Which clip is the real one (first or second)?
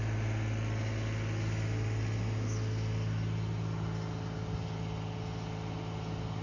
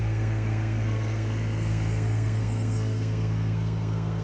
first